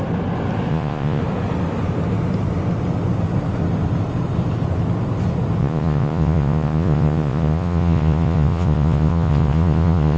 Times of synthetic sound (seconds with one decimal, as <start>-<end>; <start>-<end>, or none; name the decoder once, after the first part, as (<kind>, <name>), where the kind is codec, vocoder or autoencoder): 0.7-1.2 (vocoder, Vocos); 5.6-10.2